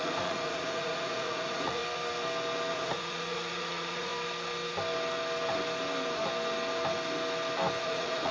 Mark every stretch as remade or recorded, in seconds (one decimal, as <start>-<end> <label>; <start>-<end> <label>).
0.0-1.8 remade; 1.8-2.7 recorded; 2.7-4.1 remade; 4.1-7.8 recorded; 7.8-8.3 remade